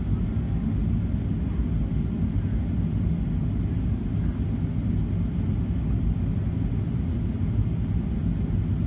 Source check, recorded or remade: recorded